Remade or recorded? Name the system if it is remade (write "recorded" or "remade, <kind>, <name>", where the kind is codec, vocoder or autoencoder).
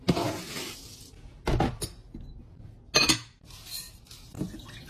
recorded